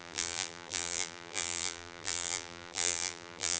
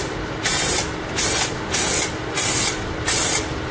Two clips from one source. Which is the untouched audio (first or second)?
second